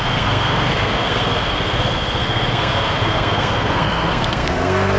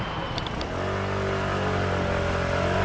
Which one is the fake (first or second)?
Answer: first